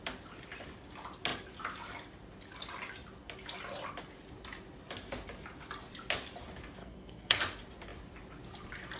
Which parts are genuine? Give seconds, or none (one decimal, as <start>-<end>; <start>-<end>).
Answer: 0.0-6.8; 7.4-9.0